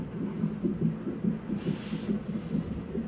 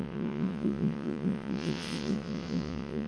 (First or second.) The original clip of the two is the first